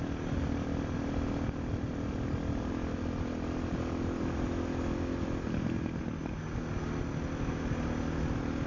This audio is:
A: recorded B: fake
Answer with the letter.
A